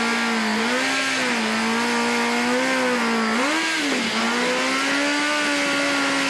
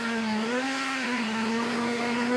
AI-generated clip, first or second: second